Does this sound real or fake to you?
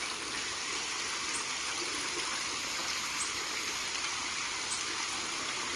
real